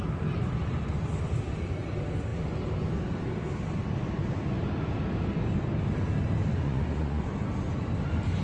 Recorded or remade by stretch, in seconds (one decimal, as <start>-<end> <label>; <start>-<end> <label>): 0.0-6.5 recorded; 6.5-7.3 remade; 7.3-8.4 recorded